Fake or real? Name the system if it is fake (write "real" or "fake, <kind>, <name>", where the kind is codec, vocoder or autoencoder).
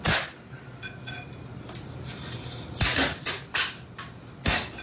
real